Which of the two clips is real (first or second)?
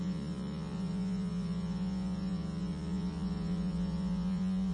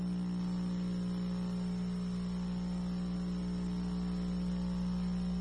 second